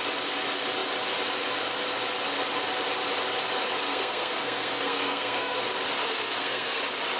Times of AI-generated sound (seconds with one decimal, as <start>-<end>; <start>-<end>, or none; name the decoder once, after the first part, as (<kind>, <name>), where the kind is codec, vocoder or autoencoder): 3.9-5.6 (codec, SNAC); 6.0-6.8